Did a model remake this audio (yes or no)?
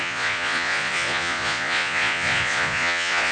yes